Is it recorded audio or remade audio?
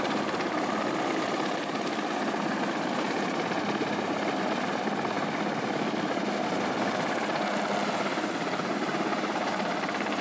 recorded